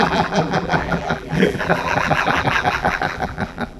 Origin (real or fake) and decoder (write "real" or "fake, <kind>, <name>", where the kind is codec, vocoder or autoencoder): fake, vocoder, BigVGAN v2